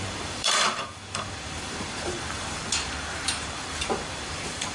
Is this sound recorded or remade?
remade